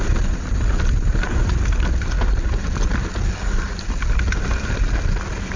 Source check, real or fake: real